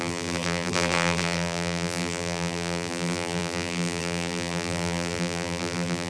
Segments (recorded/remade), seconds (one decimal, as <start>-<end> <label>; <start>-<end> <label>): 0.0-6.1 remade